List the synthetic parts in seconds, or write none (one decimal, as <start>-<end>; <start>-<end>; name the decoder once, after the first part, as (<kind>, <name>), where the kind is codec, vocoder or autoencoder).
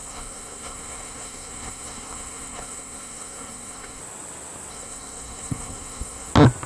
0.0-4.0 (codec, SNAC); 4.7-6.3